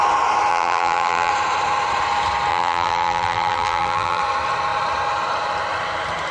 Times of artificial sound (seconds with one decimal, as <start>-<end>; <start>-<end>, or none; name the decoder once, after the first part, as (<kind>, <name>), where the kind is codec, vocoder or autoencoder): 0.5-1.3 (vocoder, BigVGAN v2); 2.5-4.2